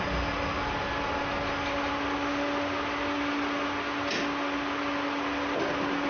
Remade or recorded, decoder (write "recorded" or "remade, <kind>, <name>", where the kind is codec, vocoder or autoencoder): recorded